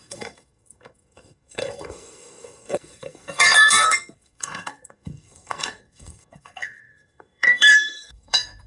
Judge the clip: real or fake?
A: fake